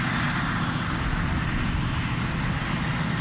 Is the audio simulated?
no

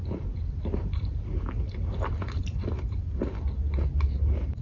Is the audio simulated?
no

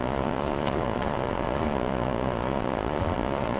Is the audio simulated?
yes